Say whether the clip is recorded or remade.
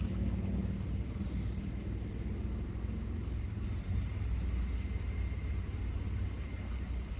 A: recorded